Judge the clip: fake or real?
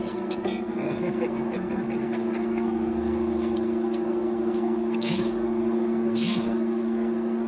fake